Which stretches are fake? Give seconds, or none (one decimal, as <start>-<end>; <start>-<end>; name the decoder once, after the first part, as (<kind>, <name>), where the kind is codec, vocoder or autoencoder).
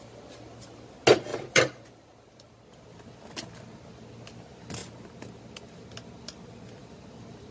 1.3-2.6 (vocoder, BigVGAN v2); 6.8-7.5